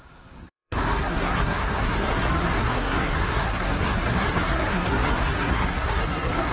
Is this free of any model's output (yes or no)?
no